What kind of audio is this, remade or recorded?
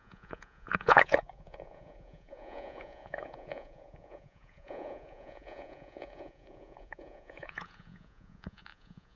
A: remade